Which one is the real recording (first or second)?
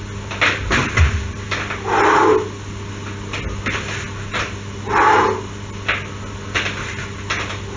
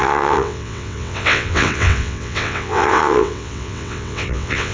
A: first